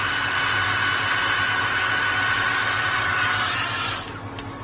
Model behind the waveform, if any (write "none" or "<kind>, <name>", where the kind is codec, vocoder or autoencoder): none